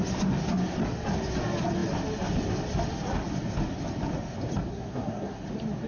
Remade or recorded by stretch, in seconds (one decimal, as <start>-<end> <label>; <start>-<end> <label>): 0.0-4.7 recorded; 4.7-5.4 remade; 5.4-5.9 recorded